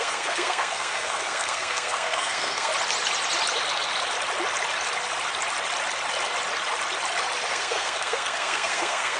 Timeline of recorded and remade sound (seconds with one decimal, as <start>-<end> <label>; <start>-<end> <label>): 0.0-2.7 remade; 2.7-7.5 recorded; 7.5-9.2 remade